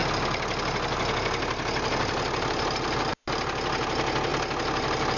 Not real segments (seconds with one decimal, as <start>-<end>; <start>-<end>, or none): none